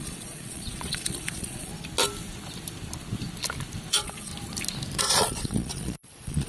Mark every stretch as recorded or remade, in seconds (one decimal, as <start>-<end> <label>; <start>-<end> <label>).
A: 0.0-1.7 remade; 1.7-3.9 recorded; 3.9-4.3 remade; 4.3-5.0 recorded; 5.0-6.5 remade